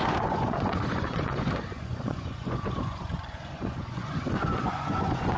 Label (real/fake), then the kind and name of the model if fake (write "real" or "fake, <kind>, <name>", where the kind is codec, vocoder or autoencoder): fake, vocoder, Vocos